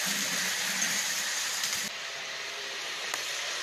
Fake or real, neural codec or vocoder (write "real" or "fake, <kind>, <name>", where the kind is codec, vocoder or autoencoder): fake, vocoder, BigVGAN v2